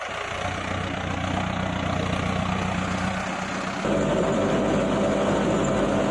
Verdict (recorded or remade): recorded